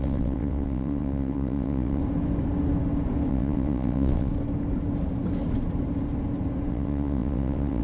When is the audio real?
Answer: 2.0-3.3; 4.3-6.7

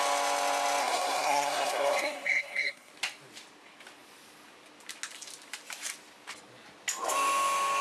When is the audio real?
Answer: 0.0-0.8; 2.9-7.8

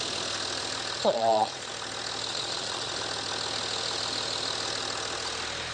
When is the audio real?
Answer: 0.0-1.0; 1.7-2.3; 3.0-5.7

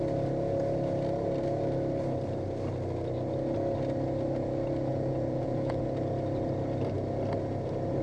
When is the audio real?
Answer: 0.0-4.9; 5.8-8.0